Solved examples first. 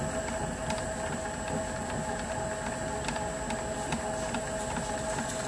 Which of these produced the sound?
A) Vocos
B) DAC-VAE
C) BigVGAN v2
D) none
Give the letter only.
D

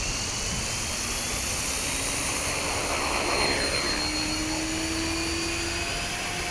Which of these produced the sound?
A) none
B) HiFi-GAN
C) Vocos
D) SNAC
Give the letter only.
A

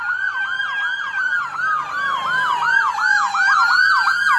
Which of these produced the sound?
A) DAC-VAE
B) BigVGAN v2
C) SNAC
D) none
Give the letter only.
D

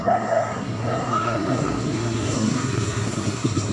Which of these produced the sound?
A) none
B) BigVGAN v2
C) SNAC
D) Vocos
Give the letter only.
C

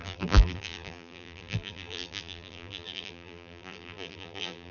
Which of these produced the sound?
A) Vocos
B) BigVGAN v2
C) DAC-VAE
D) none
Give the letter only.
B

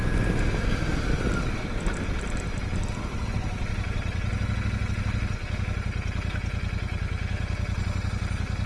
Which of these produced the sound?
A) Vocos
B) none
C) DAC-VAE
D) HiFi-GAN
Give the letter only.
B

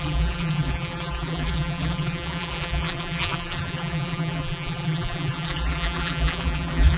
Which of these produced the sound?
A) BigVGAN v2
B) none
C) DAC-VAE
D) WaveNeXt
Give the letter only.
A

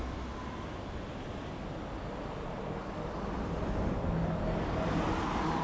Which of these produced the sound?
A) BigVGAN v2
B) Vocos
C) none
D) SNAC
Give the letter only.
C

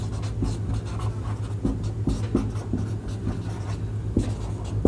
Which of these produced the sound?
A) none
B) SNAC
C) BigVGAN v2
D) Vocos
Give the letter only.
A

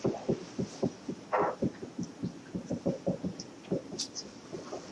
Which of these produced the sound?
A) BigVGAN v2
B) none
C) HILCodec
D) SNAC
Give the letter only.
B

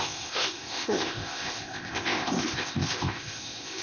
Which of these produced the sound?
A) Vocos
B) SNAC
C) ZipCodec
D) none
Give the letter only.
C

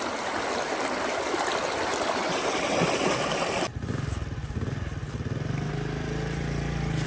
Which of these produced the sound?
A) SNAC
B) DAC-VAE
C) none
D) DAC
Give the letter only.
C